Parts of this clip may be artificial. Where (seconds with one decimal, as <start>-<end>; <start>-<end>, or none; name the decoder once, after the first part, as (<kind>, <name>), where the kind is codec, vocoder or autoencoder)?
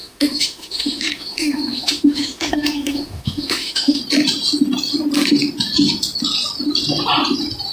0.0-4.0 (autoencoder, DAC-VAE)